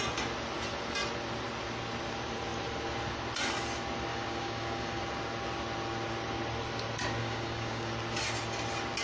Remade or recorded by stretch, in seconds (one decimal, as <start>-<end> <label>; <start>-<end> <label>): 0.0-4.1 recorded; 4.1-5.0 remade; 5.0-7.2 recorded; 7.2-7.9 remade; 7.9-9.0 recorded